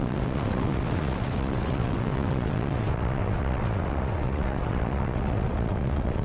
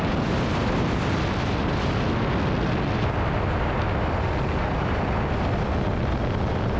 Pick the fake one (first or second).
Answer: first